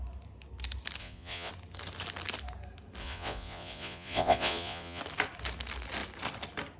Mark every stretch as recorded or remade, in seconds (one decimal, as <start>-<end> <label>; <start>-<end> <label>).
0.0-1.0 recorded; 1.0-1.5 remade; 1.5-3.0 recorded; 3.0-5.0 remade; 5.0-6.8 recorded

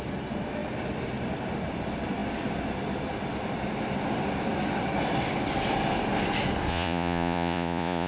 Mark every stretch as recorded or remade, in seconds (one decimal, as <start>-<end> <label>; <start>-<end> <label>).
0.0-6.7 recorded; 6.7-8.1 remade

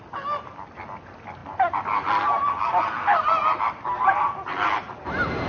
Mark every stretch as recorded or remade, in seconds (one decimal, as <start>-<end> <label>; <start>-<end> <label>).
0.0-5.5 recorded

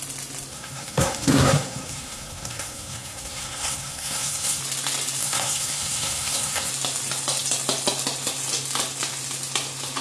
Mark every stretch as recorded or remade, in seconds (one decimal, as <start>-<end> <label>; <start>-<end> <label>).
0.0-0.5 recorded; 0.5-4.6 remade; 4.6-5.2 recorded; 5.2-6.7 remade; 6.7-10.0 recorded

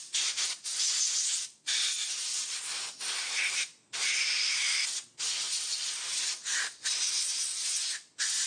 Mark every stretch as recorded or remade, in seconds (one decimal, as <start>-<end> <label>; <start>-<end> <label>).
0.0-8.5 recorded

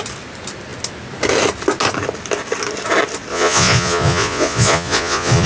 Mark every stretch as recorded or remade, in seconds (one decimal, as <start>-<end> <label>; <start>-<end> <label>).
0.0-3.3 recorded; 3.3-5.5 remade